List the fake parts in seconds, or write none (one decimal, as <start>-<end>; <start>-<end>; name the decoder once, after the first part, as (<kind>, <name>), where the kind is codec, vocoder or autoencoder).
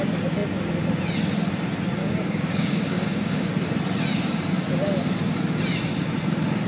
2.0-3.5 (codec, DAC)